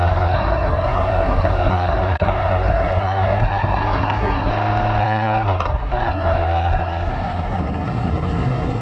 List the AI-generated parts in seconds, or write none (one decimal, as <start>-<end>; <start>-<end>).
0.0-4.5; 5.0-8.8